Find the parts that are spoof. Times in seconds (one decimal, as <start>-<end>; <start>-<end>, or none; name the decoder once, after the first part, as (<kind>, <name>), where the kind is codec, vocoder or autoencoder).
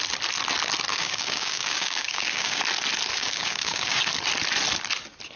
0.9-2.6 (codec, DAC); 3.1-4.0